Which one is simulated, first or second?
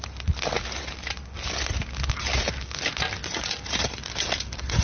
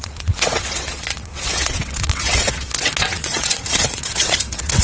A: second